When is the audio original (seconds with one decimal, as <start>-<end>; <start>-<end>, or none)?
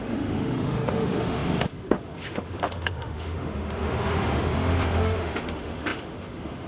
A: none